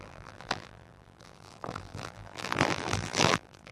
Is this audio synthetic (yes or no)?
yes